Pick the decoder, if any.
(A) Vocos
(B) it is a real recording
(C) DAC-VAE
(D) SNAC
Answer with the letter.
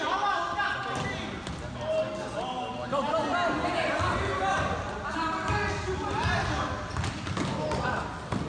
B